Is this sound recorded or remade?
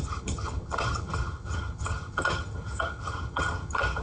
remade